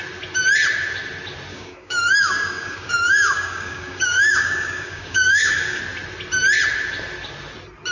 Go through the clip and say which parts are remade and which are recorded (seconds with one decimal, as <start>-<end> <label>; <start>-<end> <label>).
0.0-1.5 recorded; 1.5-5.8 remade; 5.8-7.9 recorded